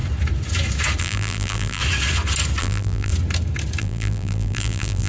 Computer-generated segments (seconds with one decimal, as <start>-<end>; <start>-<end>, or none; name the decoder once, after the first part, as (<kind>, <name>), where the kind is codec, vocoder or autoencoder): 1.0-1.8 (vocoder, BigVGAN v2); 2.6-3.1; 3.8-5.1